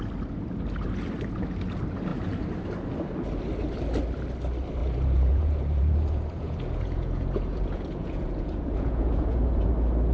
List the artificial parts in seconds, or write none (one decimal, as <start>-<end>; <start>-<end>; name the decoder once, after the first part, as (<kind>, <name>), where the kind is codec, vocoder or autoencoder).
4.8-9.7 (vocoder, Vocos)